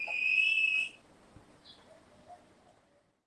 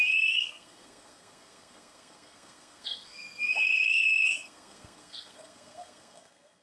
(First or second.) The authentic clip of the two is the first